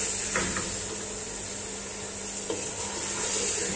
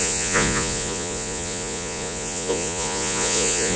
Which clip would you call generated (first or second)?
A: second